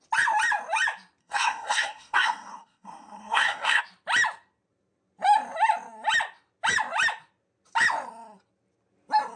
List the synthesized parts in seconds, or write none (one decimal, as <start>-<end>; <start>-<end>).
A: 1.2-3.8